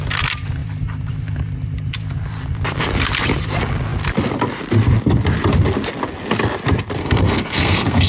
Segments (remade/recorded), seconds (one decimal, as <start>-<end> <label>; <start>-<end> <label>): 0.0-7.0 recorded; 7.0-8.1 remade